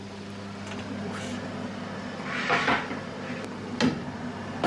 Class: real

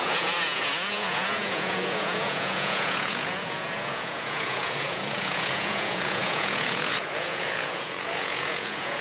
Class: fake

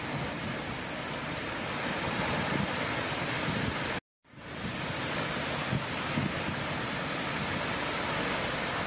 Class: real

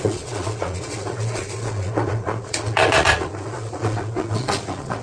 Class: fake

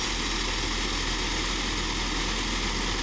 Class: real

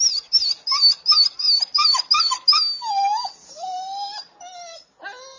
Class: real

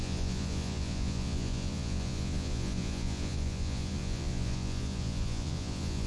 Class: fake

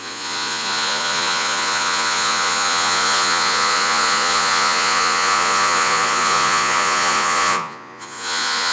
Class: fake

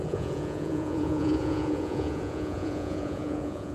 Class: fake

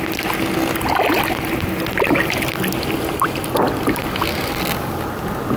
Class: real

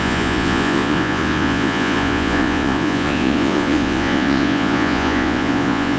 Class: fake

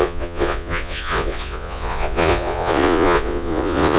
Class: fake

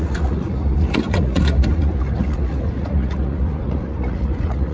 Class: fake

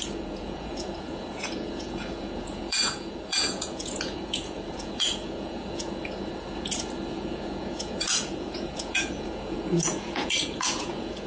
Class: fake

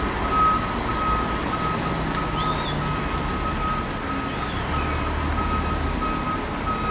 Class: real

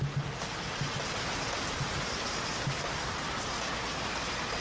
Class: real